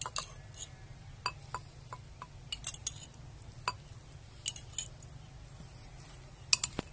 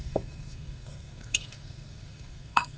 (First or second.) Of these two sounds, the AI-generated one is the second